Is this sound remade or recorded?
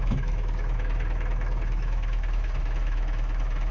remade